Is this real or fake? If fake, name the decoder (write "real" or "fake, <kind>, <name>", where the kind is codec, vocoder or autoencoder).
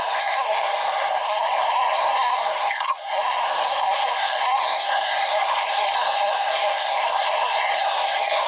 fake, codec, SNAC